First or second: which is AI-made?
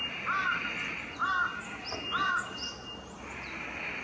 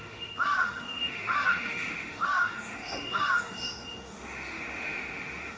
second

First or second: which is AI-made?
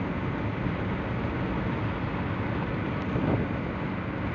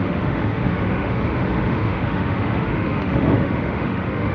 second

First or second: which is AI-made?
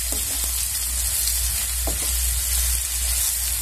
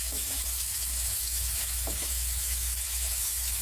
second